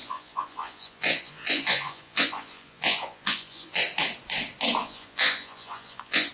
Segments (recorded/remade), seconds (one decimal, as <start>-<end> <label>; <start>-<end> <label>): 0.0-3.8 remade; 3.8-4.8 recorded; 4.8-6.3 remade